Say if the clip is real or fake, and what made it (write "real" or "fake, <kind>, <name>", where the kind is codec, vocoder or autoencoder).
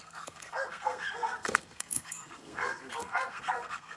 fake, codec, SNAC